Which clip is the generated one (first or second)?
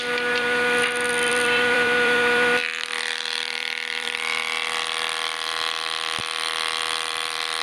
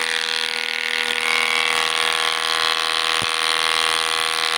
first